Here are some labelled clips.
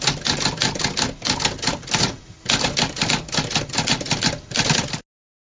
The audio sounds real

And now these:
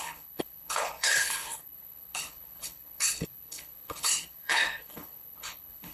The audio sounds fake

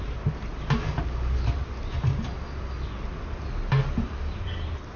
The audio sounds real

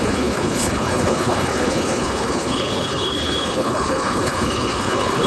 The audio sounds fake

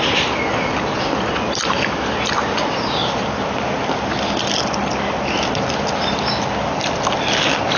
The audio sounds real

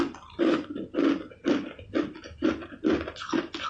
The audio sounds real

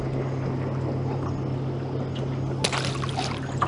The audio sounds real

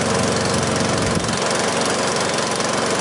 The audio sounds real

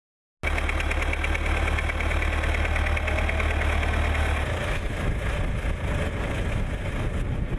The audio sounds real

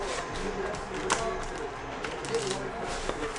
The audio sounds real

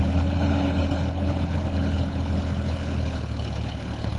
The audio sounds fake